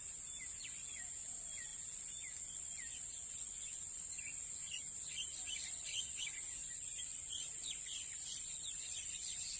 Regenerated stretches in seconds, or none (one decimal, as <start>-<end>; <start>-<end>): none